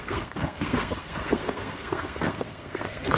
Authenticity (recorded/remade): remade